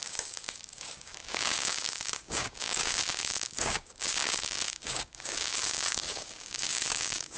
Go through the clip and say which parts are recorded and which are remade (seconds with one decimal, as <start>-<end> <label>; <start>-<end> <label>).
0.0-7.4 remade